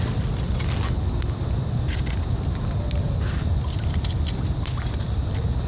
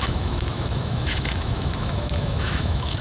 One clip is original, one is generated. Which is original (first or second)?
first